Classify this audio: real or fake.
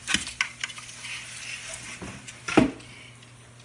real